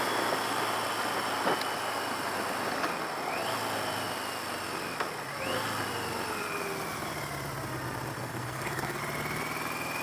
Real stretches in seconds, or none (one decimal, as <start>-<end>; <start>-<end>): 0.0-8.1; 9.0-10.0